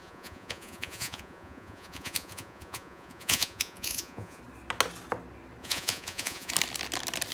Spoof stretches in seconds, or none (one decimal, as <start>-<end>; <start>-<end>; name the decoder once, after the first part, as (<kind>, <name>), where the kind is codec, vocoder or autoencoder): 0.0-4.4 (vocoder, Vocos); 5.6-6.5